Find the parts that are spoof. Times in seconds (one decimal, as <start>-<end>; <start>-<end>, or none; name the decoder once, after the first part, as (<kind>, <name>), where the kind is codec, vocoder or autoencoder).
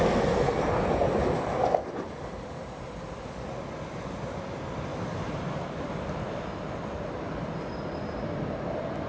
4.9-6.7 (vocoder, BigVGAN v2)